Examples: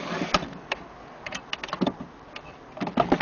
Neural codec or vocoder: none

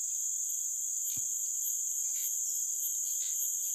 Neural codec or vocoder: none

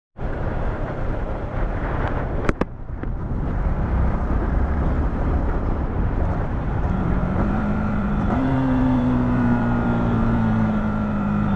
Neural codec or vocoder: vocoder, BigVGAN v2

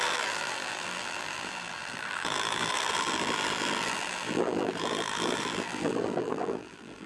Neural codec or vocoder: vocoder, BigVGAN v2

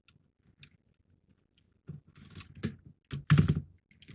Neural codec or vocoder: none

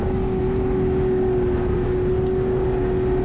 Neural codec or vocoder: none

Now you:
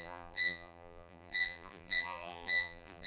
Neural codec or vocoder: vocoder, BigVGAN v2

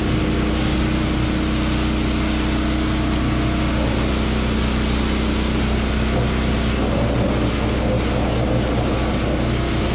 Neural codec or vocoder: none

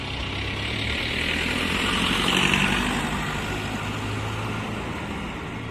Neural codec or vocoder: none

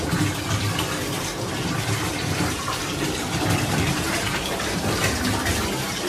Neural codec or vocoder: vocoder, BigVGAN v2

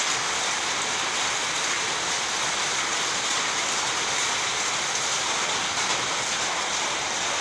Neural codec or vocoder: none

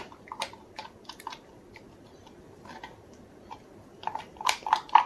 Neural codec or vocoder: vocoder, BigVGAN v2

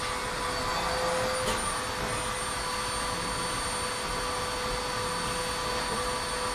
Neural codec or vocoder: none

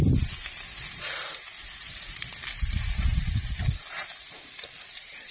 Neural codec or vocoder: vocoder, BigVGAN v2